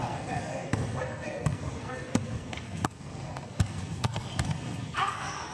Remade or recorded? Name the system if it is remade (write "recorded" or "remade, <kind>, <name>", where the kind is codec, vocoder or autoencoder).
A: remade, codec, SNAC